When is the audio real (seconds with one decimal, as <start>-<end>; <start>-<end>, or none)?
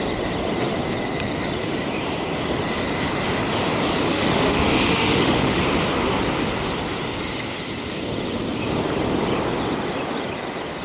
0.0-4.1; 5.6-10.8